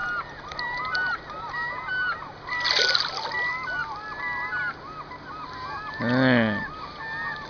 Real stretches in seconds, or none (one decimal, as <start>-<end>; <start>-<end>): 0.0-7.5